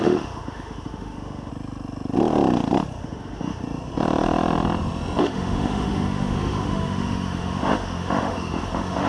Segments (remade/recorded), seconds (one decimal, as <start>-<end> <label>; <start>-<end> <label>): 0.0-1.5 remade; 1.5-3.0 recorded; 3.0-3.6 remade; 3.6-5.2 recorded; 5.2-9.1 remade